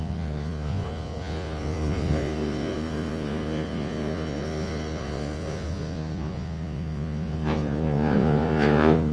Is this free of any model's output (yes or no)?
no